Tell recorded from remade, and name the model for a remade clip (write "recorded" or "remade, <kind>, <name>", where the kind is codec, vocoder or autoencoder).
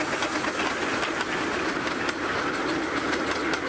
recorded